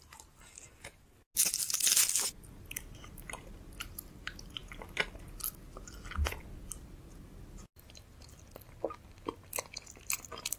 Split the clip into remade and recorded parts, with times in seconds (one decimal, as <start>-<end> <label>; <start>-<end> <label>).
0.0-10.6 recorded

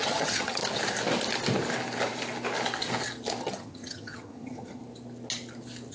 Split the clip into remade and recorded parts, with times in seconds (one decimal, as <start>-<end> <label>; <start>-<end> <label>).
0.0-0.6 remade; 0.6-3.4 recorded; 3.4-4.8 remade; 4.8-5.9 recorded

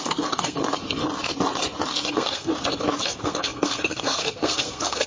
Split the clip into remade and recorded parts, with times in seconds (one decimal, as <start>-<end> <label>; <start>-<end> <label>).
0.0-0.6 remade; 0.6-2.1 recorded; 2.1-2.5 remade; 2.5-3.1 recorded; 3.1-5.1 remade

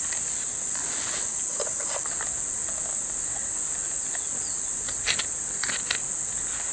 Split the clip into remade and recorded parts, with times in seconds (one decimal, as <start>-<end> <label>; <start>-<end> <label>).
0.0-6.7 recorded

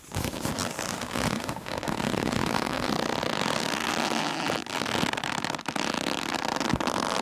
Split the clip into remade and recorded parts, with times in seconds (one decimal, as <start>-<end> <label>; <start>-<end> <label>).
0.0-0.9 recorded; 0.9-2.9 remade; 2.9-7.2 recorded

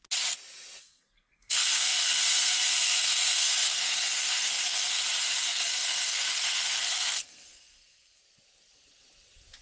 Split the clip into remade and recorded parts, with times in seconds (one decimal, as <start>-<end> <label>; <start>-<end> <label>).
0.0-0.8 recorded; 0.8-5.0 remade; 5.0-5.4 recorded; 5.4-8.2 remade; 8.2-9.6 recorded

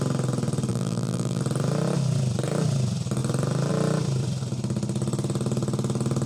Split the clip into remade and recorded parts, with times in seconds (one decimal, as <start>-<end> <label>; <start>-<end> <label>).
0.0-0.7 recorded; 0.7-1.4 remade; 1.4-6.3 recorded